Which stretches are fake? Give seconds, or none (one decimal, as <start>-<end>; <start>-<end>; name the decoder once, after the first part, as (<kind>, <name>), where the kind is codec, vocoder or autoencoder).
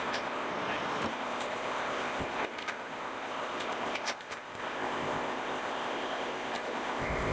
0.0-0.5 (codec, ZipCodec); 1.1-7.3